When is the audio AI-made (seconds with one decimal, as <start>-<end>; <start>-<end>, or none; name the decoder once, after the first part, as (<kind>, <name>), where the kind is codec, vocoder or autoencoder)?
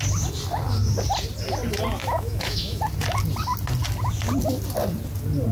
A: 2.0-2.8 (autoencoder, DAC-VAE)